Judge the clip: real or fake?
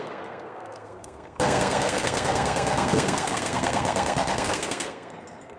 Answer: fake